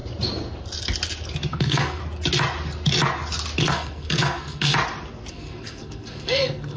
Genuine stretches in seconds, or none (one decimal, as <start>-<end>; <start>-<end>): 0.0-1.5; 2.0-3.6; 4.7-5.3